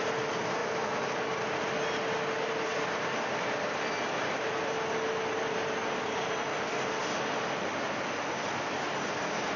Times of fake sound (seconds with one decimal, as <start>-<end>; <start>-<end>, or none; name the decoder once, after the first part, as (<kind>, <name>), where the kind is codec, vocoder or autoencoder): none